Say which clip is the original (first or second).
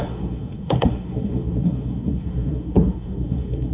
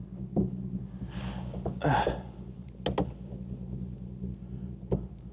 second